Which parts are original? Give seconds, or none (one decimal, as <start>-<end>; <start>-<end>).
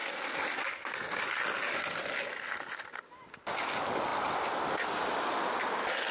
0.0-6.1